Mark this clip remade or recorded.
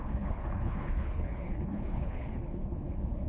remade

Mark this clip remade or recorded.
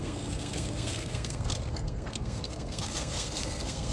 remade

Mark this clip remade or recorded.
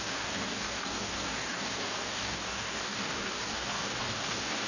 remade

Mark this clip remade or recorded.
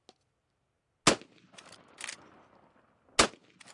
recorded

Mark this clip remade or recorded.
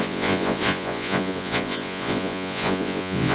remade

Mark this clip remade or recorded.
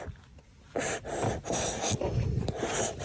recorded